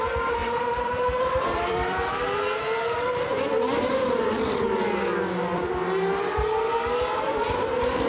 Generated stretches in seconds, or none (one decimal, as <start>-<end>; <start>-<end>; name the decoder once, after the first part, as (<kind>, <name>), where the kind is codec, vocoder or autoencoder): 0.4-2.2 (vocoder, BigVGAN v2); 3.3-4.2